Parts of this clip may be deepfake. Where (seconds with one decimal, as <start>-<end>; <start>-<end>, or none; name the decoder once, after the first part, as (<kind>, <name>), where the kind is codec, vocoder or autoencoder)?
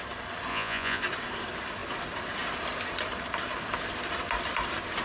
0.5-1.0 (vocoder, Vocos)